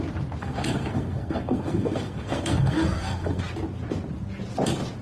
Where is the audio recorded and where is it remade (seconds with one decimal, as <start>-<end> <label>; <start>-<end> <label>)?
0.0-0.4 recorded; 0.4-3.4 remade; 3.4-5.0 recorded